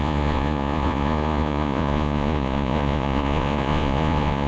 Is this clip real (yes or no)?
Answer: no